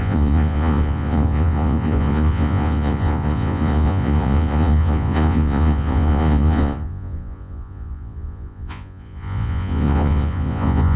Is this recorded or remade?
remade